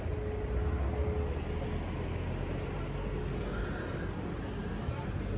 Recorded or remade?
recorded